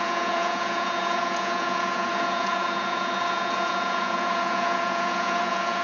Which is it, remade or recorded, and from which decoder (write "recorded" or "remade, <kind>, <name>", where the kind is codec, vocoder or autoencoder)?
remade, vocoder, Vocos